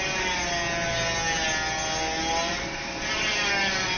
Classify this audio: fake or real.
real